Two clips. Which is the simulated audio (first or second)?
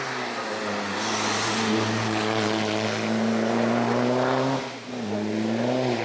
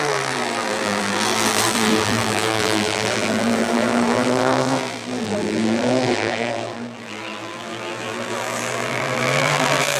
second